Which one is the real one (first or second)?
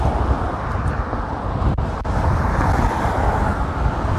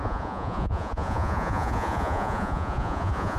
first